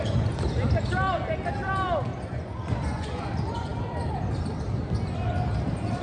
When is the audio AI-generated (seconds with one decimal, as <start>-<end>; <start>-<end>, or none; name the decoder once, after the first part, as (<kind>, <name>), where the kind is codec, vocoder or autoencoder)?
2.1-3.2 (vocoder, Vocos)

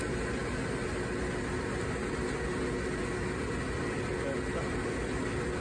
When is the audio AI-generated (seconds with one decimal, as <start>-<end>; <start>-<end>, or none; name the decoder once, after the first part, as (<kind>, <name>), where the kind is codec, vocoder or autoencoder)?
none